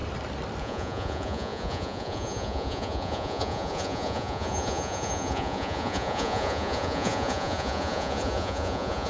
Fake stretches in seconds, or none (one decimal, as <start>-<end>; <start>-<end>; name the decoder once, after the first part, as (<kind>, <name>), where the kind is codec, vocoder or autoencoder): 0.6-9.1 (vocoder, Vocos)